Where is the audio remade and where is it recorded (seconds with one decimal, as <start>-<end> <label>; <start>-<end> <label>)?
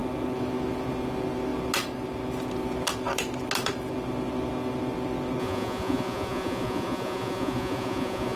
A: 0.0-5.4 recorded; 5.4-8.4 remade